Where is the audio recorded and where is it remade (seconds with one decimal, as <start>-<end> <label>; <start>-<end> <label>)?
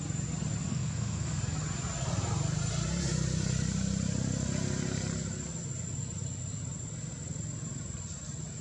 0.0-0.7 recorded; 0.7-1.4 remade; 1.4-8.6 recorded